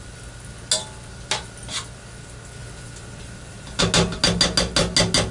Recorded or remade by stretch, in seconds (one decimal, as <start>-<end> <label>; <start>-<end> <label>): 0.0-2.6 recorded; 2.6-3.8 remade; 3.8-5.3 recorded